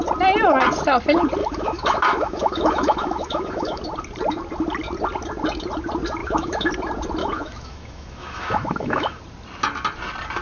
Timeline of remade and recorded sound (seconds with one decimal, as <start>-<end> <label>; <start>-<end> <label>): 0.0-1.4 recorded; 1.4-3.8 remade; 3.8-6.2 recorded; 6.2-6.7 remade; 6.7-7.2 recorded; 7.2-9.2 remade; 9.2-10.4 recorded